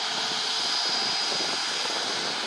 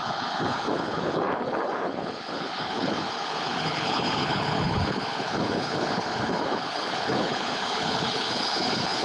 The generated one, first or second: second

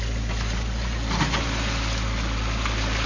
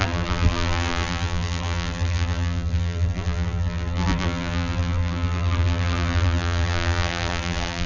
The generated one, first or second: second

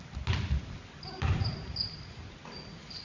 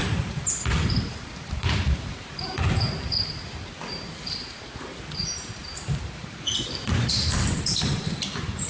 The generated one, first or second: second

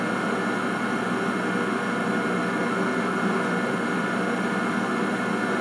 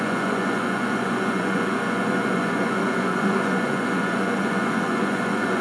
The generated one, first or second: second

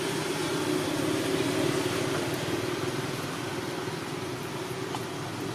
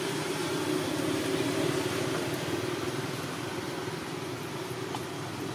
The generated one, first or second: second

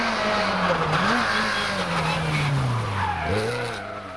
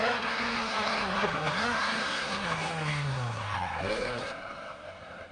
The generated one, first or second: second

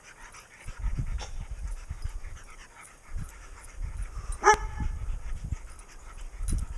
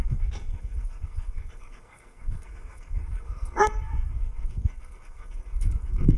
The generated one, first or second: second